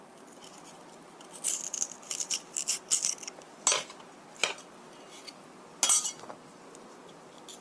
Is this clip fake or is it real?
real